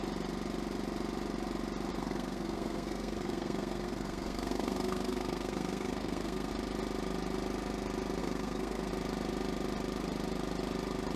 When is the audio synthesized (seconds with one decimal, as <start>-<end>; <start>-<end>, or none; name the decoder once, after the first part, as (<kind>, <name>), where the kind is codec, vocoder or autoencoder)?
1.9-6.5 (codec, SNAC); 8.2-8.9